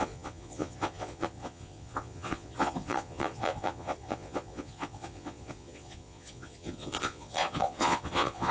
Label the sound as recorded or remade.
remade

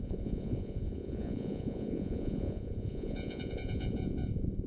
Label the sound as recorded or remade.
remade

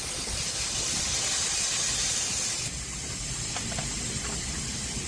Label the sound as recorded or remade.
recorded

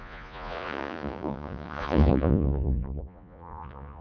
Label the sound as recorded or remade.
remade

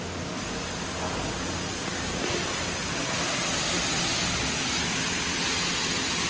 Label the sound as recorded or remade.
recorded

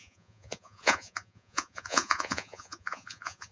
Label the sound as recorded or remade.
remade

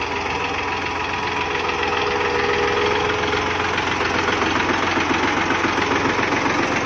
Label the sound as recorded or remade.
recorded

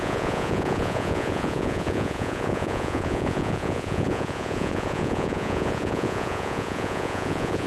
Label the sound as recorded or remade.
remade